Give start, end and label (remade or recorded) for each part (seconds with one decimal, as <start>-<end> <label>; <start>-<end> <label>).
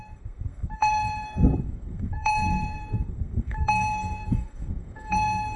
0.0-5.6 remade